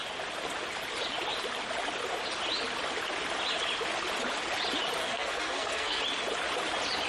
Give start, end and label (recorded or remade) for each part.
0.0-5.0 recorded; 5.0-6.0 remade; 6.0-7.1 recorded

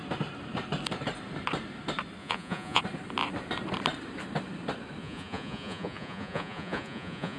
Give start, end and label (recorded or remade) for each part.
0.0-2.2 recorded; 2.2-2.8 remade; 2.8-5.0 recorded; 5.0-7.4 remade

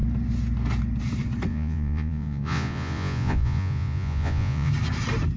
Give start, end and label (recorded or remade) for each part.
0.0-1.5 recorded; 1.5-4.7 remade; 4.7-5.4 recorded

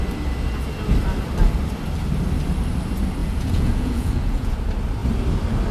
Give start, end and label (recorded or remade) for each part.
0.0-3.2 recorded; 3.2-4.5 remade; 4.5-5.7 recorded

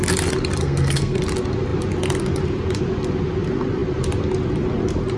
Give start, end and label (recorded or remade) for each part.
0.0-0.6 recorded; 0.6-1.2 remade; 1.2-5.2 recorded